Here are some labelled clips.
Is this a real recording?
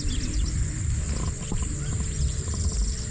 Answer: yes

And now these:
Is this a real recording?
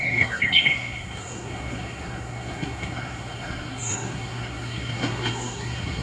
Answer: no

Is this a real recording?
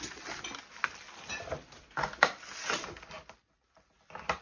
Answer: yes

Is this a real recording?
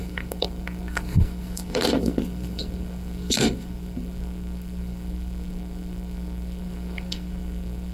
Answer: no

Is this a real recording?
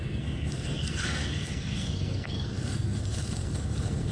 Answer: no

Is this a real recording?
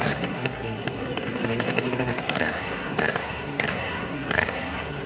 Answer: no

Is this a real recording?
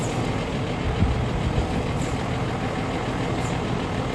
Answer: yes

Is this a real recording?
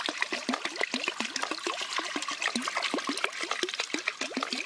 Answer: yes